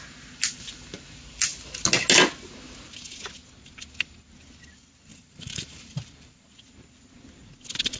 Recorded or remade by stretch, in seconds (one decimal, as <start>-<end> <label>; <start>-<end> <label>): 0.0-5.1 recorded; 5.1-6.5 remade; 6.5-8.0 recorded